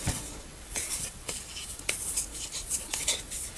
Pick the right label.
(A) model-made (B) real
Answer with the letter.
A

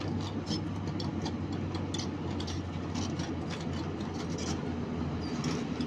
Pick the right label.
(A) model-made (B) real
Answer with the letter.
B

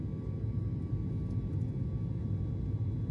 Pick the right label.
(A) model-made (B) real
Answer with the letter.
B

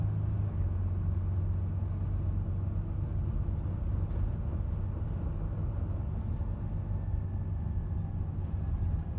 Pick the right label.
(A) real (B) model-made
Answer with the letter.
A